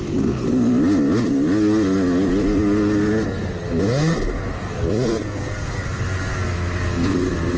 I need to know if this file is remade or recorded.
recorded